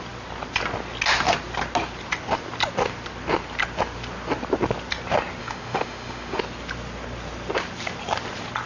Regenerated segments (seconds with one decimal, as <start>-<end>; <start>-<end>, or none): 5.4-6.4